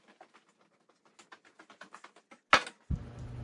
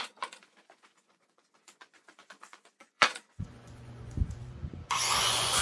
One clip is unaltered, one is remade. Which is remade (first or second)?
second